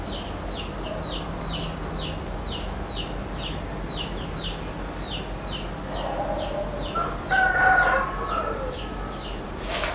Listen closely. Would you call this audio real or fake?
real